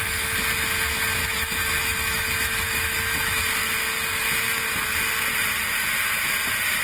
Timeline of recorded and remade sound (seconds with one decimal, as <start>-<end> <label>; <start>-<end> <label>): 0.0-1.2 recorded; 1.2-3.3 remade; 3.3-6.8 recorded